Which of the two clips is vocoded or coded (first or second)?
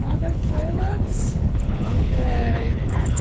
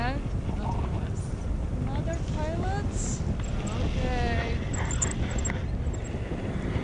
first